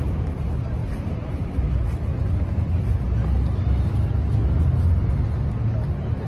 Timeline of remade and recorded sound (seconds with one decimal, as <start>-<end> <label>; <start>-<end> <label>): 0.0-6.3 recorded